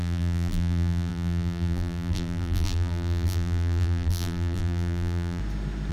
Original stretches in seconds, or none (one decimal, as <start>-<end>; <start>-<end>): 5.4-5.9